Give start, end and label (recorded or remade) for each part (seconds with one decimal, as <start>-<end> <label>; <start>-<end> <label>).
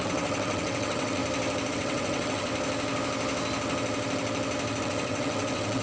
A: 0.0-1.2 remade; 1.2-1.7 recorded; 1.7-2.5 remade; 2.5-4.8 recorded; 4.8-5.8 remade